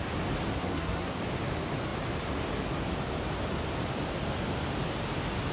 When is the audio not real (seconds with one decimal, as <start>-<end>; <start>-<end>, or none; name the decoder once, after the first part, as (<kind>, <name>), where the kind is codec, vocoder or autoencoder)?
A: 0.5-1.2 (codec, SNAC)